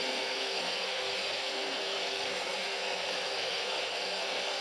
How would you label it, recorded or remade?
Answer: remade